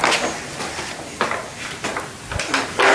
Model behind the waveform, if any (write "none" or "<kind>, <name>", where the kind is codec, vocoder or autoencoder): none